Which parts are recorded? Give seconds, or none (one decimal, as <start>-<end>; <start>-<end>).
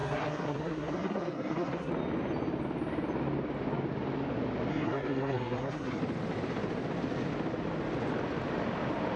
1.9-4.7; 6.0-9.2